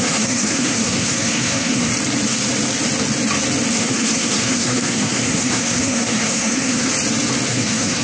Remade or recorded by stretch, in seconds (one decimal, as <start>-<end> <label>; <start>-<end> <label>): 0.0-1.9 remade; 1.9-3.7 recorded; 3.7-6.9 remade; 6.9-7.5 recorded; 7.5-8.0 remade